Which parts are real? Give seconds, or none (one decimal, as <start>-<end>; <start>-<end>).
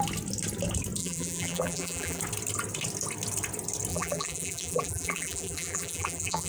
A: 0.0-1.0; 2.2-3.9